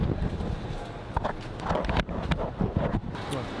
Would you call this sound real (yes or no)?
yes